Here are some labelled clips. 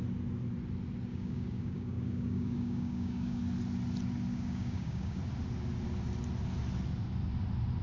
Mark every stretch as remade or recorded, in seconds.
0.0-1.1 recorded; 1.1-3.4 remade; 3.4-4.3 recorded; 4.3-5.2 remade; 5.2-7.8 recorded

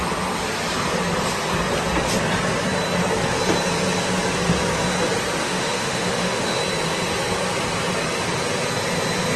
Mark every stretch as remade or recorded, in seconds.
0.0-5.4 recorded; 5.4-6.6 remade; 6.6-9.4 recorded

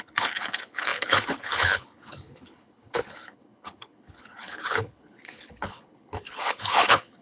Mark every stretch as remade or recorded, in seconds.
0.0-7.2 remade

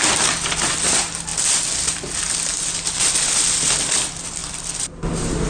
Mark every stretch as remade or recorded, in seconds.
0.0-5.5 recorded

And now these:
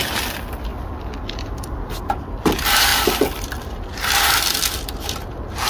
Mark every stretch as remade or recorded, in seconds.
0.0-5.7 recorded

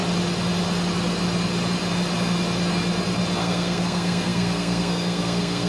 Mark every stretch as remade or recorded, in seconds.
0.0-3.4 recorded; 3.4-5.7 remade